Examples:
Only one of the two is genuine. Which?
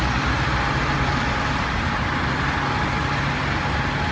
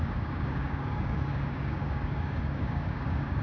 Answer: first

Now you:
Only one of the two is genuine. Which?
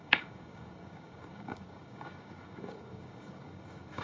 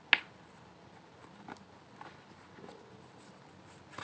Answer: second